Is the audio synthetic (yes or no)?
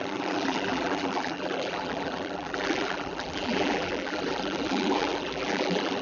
yes